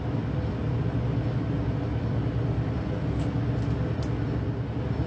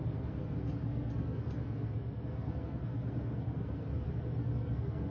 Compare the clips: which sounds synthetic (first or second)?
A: second